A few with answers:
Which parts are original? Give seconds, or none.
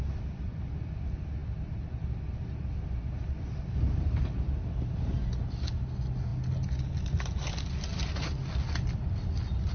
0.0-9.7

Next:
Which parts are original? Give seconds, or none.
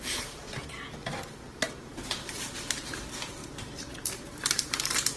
none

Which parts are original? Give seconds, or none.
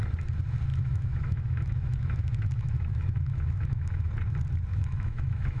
0.0-0.7; 4.1-4.7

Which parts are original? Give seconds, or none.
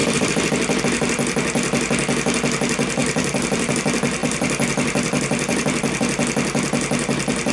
0.8-3.0; 3.7-4.2; 6.0-7.5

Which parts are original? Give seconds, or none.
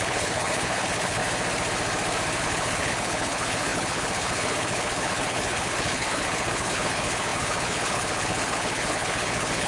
1.2-2.4